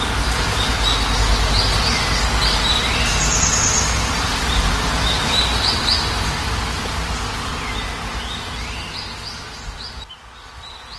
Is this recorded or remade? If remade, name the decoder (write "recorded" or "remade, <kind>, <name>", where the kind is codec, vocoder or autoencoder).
recorded